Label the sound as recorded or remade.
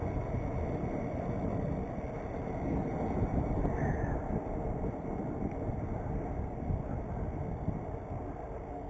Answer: remade